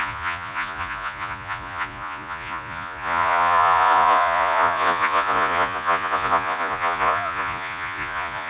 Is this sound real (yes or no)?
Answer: no